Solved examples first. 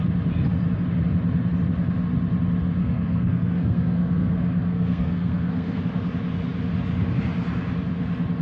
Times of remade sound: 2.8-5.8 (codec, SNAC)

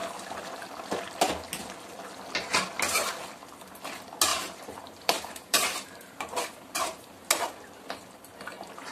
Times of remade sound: 4.3-7.3 (vocoder, BigVGAN v2)

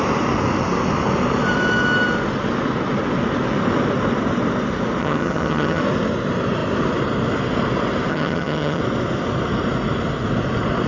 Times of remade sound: 5.0-5.8 (vocoder, HiFi-GAN); 8.1-8.8

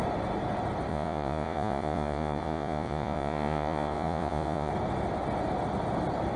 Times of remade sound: 0.9-4.7 (vocoder, Vocos)

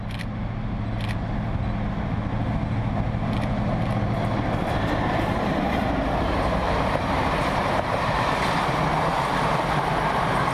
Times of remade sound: 4.6-8.4 (vocoder, BigVGAN v2)